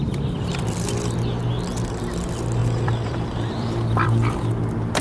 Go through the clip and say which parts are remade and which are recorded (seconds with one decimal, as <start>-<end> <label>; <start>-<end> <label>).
0.0-2.6 recorded; 2.6-4.5 remade; 4.5-5.0 recorded